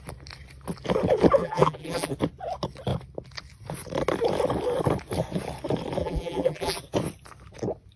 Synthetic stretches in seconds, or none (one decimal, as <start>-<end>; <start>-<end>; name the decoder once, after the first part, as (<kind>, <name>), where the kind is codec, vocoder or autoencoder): 1.4-2.1 (vocoder, BigVGAN v2); 6.0-6.8